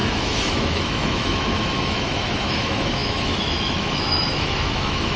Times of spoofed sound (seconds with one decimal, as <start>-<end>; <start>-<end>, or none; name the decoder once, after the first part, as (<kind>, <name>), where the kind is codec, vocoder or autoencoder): 0.0-5.2 (autoencoder, DAC-VAE)